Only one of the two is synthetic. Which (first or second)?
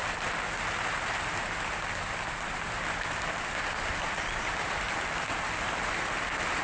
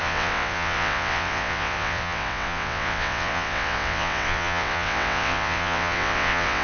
second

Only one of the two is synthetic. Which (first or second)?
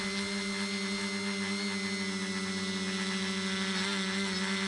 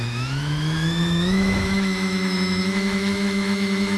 second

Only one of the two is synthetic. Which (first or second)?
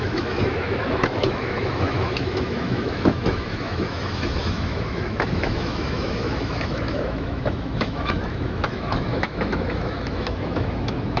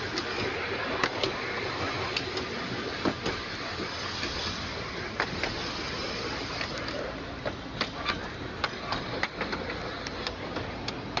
first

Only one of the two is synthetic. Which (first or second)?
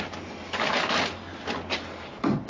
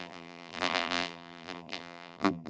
second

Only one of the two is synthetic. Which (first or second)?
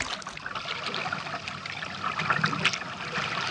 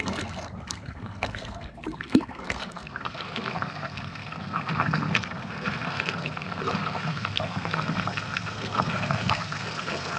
second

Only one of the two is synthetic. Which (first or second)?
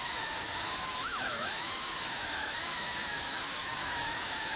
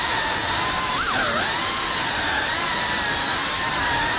first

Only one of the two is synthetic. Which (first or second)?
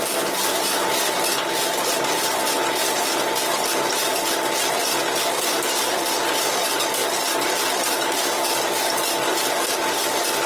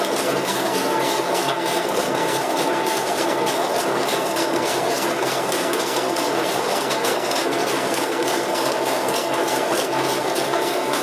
second